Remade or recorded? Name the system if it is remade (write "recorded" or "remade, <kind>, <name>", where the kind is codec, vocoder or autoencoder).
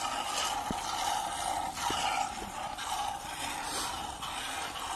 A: recorded